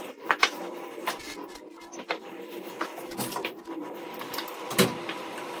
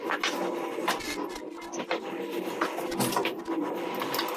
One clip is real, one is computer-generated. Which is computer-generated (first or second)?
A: first